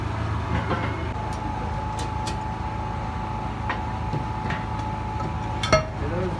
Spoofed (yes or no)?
no